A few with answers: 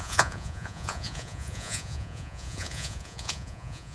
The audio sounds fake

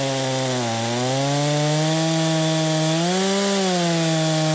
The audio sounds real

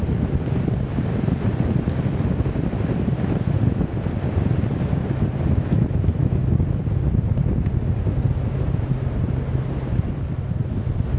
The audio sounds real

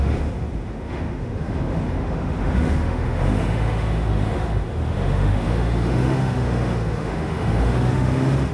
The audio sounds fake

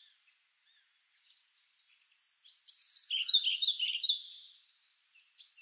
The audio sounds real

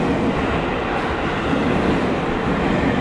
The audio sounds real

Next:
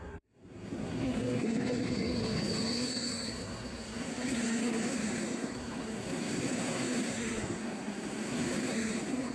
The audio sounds fake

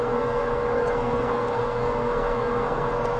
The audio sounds fake